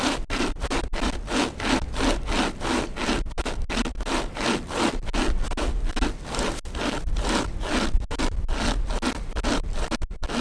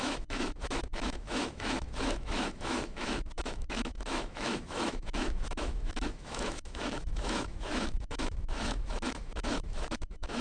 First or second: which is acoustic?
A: first